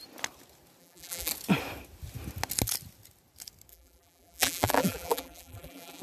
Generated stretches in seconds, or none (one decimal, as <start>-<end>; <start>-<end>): 0.8-1.3; 3.7-6.0